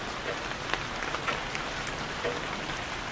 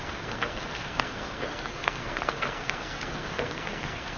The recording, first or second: first